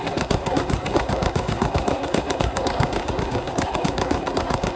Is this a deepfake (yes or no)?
yes